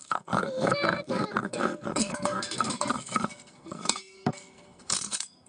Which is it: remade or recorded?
remade